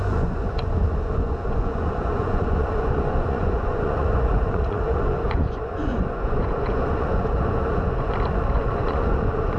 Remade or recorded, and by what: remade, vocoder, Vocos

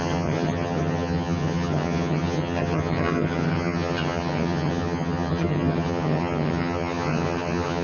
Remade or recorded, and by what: remade, vocoder, HiFi-GAN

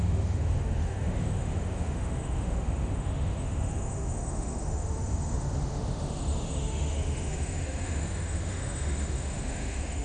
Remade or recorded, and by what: remade, autoencoder, DAC-VAE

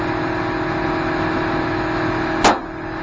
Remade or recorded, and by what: recorded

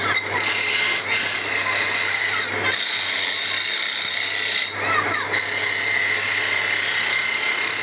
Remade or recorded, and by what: recorded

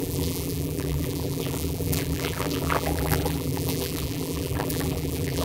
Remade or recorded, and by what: remade, vocoder, BigVGAN v2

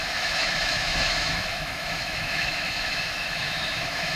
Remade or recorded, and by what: remade, autoencoder, DAC-VAE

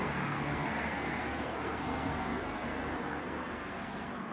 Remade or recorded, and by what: remade, codec, SNAC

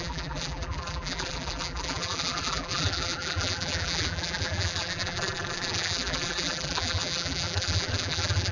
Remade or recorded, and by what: remade, vocoder, BigVGAN v2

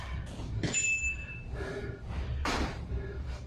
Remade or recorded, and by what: remade, vocoder, BigVGAN v2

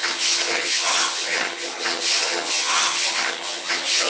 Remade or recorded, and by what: remade, vocoder, HiFi-GAN